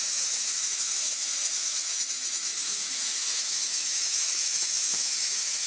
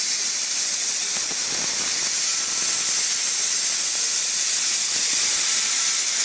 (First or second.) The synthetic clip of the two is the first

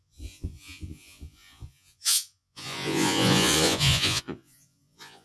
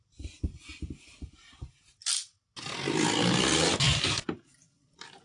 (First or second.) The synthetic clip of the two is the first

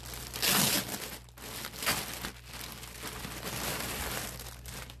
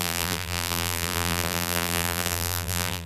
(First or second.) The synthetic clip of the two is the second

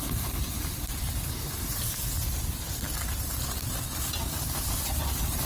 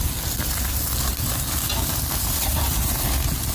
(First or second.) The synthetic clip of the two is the first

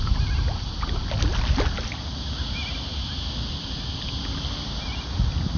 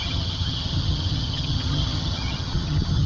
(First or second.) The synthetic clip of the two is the second